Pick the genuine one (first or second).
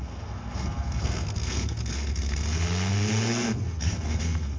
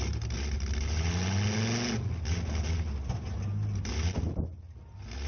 second